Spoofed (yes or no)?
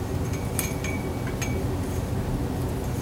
no